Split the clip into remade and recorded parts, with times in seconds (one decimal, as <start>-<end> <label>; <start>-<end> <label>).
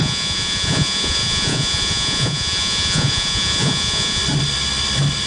0.0-4.2 remade; 4.2-5.3 recorded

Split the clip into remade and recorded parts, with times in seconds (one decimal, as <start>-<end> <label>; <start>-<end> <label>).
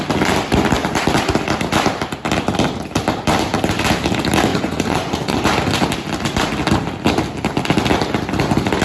0.0-4.5 recorded; 4.5-5.4 remade; 5.4-8.8 recorded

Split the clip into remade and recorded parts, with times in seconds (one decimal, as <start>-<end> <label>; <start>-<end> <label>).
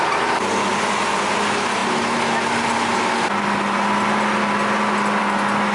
0.0-5.7 recorded